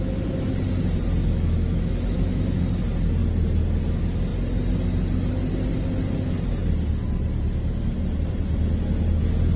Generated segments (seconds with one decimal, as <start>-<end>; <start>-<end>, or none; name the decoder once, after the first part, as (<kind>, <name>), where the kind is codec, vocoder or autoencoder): 1.2-2.6 (autoencoder, DAC-VAE)